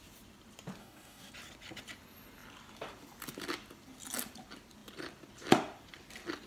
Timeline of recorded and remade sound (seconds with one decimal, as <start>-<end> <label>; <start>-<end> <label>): 0.0-0.8 recorded; 0.8-1.3 remade; 1.3-6.5 recorded